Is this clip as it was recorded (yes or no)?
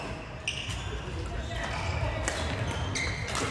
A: yes